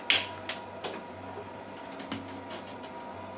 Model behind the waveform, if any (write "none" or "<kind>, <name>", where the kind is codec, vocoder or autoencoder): none